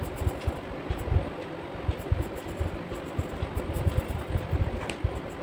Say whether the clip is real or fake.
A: real